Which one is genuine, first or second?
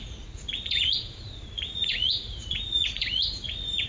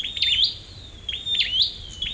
second